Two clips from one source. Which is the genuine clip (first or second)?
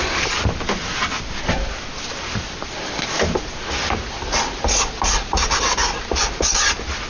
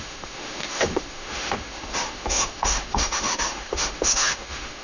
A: first